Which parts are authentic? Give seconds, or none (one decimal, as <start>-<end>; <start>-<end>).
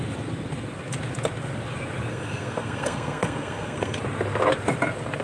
0.0-2.1; 4.0-5.2